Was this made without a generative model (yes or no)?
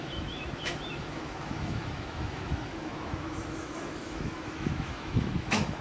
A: no